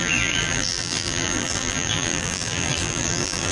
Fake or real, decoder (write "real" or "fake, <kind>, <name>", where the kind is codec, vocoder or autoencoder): fake, vocoder, BigVGAN v2